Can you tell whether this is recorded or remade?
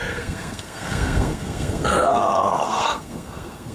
remade